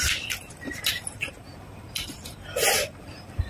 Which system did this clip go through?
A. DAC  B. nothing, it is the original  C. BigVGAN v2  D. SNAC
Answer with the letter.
C